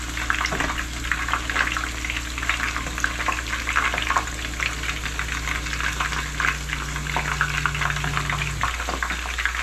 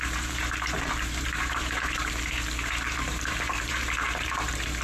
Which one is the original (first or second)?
first